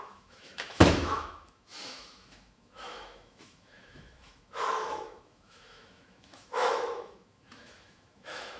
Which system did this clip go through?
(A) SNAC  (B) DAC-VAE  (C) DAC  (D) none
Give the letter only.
B